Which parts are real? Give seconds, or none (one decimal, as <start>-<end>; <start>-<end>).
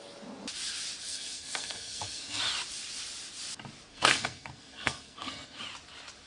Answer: 0.0-1.0; 2.4-3.9; 5.6-6.3